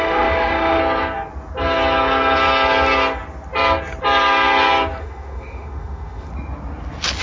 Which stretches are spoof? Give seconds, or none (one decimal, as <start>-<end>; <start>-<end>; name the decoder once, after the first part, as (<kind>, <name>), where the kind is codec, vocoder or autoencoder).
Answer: 0.0-0.8 (autoencoder, DAC-VAE); 5.0-6.3